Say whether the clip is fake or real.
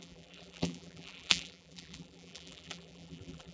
fake